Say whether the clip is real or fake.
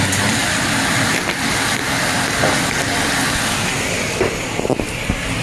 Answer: real